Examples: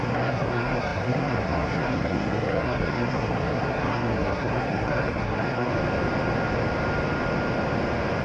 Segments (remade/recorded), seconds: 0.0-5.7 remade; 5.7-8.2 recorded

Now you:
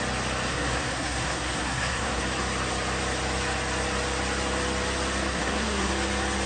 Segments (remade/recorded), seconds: 0.0-0.5 recorded; 0.5-2.2 remade; 2.2-5.3 recorded; 5.3-5.9 remade; 5.9-6.5 recorded

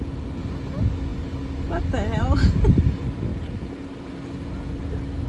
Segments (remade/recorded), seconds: 0.0-5.3 recorded